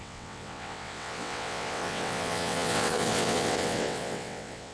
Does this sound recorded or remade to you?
remade